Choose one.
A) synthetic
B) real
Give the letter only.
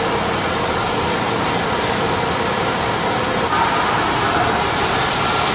B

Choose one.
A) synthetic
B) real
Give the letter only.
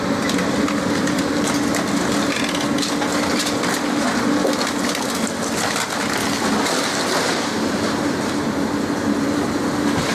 B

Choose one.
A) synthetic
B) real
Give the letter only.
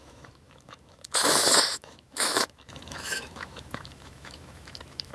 A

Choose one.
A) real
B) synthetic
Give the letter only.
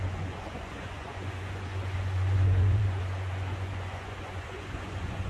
B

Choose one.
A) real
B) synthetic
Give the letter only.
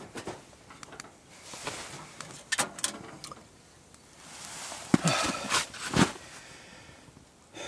A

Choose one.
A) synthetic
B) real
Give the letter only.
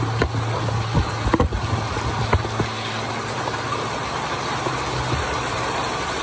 B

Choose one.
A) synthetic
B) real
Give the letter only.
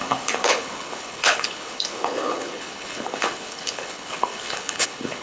A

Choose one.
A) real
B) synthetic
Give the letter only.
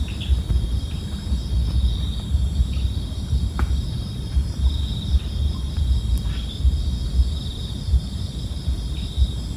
A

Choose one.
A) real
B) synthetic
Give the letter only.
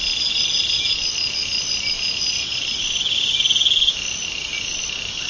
A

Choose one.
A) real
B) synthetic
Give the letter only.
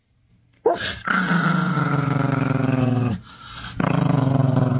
A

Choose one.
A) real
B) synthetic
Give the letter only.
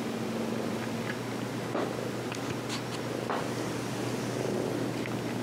A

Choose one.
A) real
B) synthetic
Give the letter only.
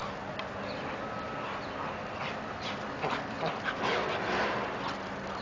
A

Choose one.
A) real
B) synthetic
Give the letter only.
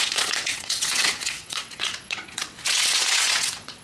B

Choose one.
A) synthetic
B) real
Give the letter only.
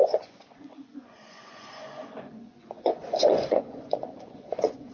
A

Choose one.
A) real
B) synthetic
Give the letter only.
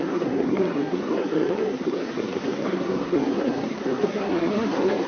B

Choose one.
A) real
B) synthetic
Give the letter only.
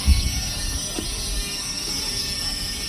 B